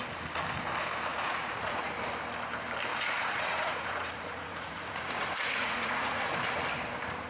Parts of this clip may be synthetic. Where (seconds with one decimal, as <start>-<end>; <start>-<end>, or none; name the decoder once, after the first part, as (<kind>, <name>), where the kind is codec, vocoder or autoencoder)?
1.1-1.8 (vocoder, Vocos); 2.9-6.4